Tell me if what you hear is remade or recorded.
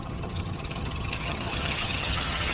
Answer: remade